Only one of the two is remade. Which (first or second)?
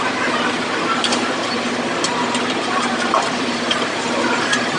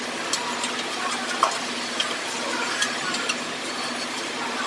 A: first